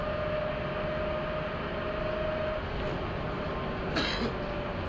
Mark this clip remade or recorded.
recorded